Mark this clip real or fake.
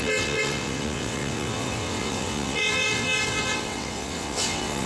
fake